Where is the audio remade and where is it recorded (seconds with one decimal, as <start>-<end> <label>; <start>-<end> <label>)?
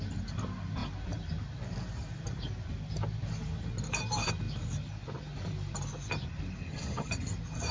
0.0-6.6 recorded; 6.6-7.1 remade; 7.1-7.7 recorded